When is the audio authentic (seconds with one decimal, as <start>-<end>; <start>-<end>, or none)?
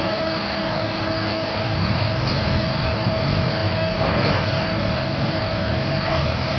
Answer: none